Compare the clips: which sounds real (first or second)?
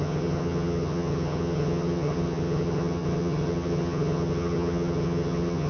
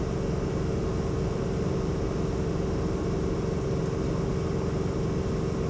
second